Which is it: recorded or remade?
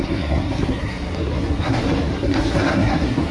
remade